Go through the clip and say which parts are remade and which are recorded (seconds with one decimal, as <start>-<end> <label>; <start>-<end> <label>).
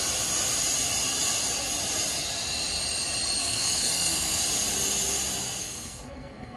0.0-3.4 recorded; 3.4-4.4 remade; 4.4-5.6 recorded; 5.6-6.6 remade